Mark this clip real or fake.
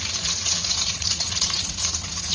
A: fake